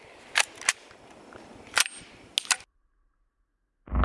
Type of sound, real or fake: real